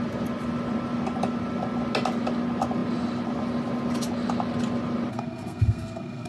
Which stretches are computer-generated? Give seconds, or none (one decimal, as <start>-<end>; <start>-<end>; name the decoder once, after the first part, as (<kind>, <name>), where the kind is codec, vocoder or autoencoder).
5.1-6.3 (codec, SNAC)